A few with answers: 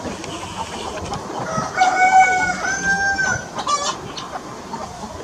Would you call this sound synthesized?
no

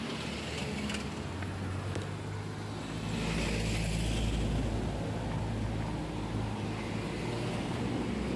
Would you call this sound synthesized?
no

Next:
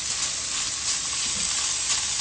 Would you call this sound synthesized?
no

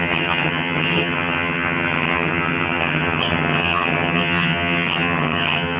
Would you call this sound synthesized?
yes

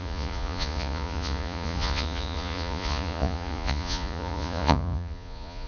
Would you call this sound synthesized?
yes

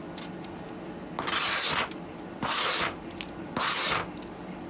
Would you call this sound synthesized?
no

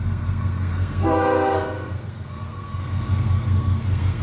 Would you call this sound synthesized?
yes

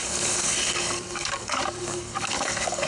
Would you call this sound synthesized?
yes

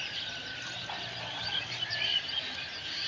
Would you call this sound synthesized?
yes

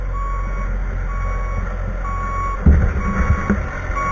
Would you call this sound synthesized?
no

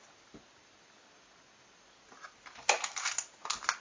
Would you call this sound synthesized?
no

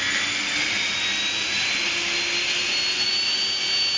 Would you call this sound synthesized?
no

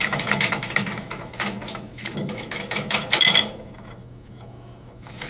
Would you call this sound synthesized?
yes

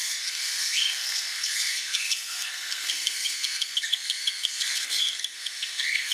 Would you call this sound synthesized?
yes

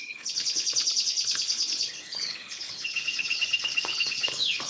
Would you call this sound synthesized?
yes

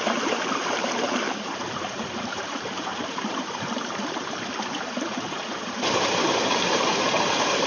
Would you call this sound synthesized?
yes